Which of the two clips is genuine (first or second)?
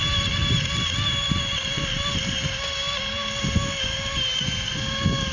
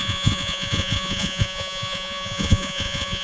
first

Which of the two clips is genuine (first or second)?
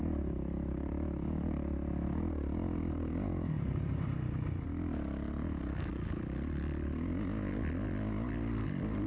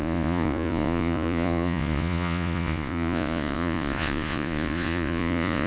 first